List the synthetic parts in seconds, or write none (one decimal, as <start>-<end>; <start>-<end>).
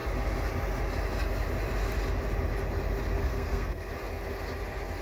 3.2-3.9